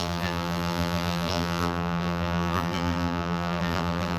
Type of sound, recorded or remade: remade